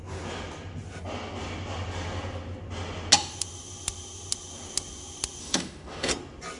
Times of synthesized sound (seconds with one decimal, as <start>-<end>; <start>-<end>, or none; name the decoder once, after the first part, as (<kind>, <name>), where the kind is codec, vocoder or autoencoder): 5.4-6.1 (autoencoder, DAC-VAE)